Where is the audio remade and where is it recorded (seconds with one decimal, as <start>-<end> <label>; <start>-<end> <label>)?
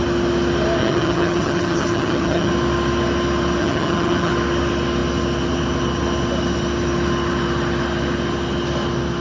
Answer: 0.0-0.8 recorded; 0.8-2.5 remade; 2.5-3.6 recorded; 3.6-4.3 remade; 4.3-9.2 recorded